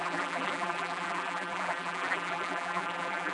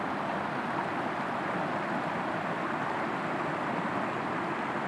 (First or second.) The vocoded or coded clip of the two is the first